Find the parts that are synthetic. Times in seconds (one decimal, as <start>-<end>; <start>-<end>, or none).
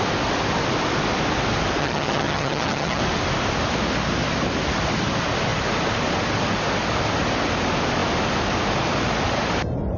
1.8-3.0